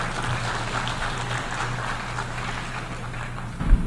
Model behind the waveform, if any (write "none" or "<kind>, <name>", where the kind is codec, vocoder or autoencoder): none